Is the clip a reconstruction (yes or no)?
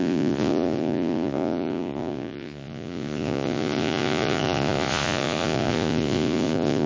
yes